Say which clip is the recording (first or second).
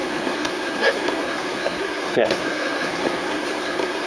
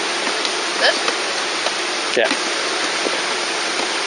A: second